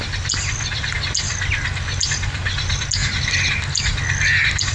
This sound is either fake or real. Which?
real